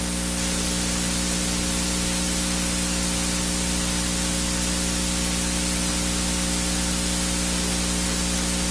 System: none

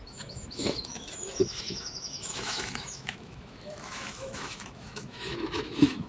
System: autoencoder, DAC-VAE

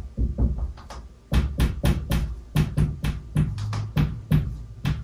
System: vocoder, BigVGAN v2